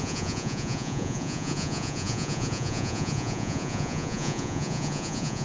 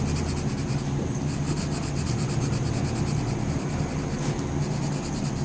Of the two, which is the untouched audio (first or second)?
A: second